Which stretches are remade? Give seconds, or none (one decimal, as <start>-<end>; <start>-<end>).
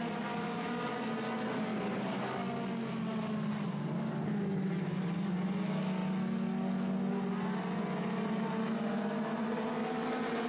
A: 1.7-2.2